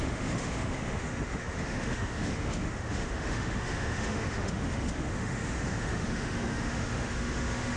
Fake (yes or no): yes